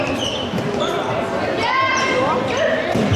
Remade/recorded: recorded